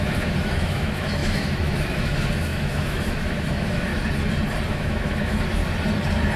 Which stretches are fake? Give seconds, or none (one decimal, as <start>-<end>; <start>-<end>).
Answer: 0.0-3.9; 4.7-5.6